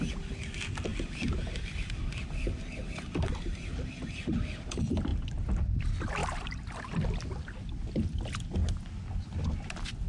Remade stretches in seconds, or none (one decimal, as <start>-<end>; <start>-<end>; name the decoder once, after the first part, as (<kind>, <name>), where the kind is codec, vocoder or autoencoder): 0.9-3.3 (vocoder, BigVGAN v2); 6.2-6.8